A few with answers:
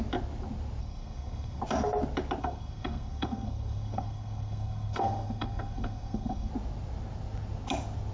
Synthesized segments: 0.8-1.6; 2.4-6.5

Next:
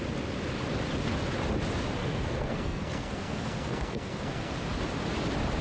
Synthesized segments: 2.0-4.5

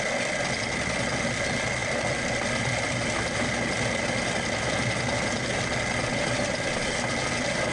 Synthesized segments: none

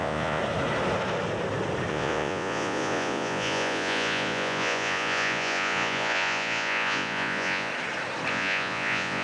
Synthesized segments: 0.0-0.4; 1.9-7.7; 8.3-9.2